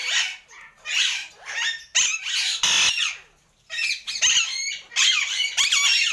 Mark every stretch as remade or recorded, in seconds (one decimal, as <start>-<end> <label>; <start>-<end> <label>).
0.0-6.1 recorded